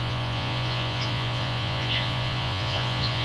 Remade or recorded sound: remade